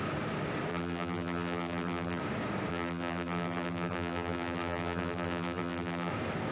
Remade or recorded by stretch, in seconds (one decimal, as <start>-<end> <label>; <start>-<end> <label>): 0.0-0.7 recorded; 0.7-2.2 remade; 2.2-2.7 recorded; 2.7-6.1 remade; 6.1-6.5 recorded